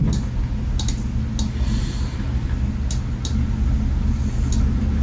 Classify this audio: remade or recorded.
recorded